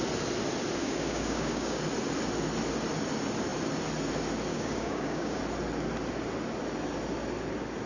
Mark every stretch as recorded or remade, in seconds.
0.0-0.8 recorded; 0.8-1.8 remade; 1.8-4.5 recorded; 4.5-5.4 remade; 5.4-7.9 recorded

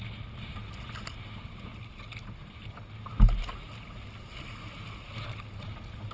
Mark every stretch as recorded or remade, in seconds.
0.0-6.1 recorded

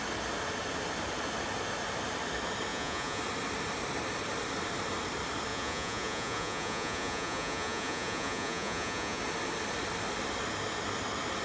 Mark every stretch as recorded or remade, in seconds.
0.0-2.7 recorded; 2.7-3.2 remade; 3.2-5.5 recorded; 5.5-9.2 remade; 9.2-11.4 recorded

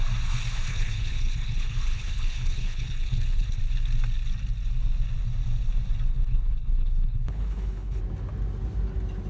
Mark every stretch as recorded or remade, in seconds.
0.0-0.7 recorded; 0.7-3.6 remade; 3.6-6.1 recorded; 6.1-8.0 remade; 8.0-9.3 recorded

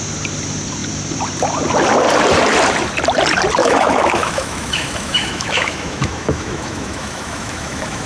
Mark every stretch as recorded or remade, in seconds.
0.0-3.6 recorded; 3.6-8.1 remade

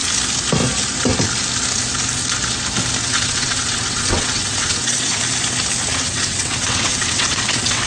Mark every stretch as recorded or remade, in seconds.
0.0-3.0 recorded; 3.0-5.2 remade; 5.2-5.9 recorded; 5.9-7.9 remade